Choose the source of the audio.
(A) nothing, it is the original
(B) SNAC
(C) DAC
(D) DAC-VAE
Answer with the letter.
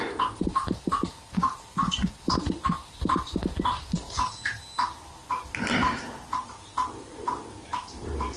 A